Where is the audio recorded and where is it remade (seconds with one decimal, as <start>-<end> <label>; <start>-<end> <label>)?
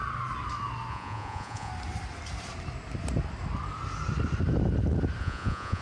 0.0-0.9 recorded; 0.9-1.7 remade; 1.7-5.2 recorded; 5.2-5.8 remade